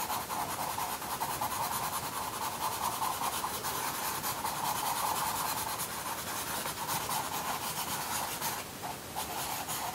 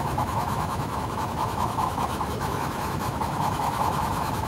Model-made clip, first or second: second